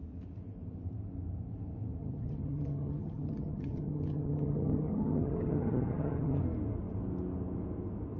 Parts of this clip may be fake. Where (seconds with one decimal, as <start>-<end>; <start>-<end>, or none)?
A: 2.0-6.4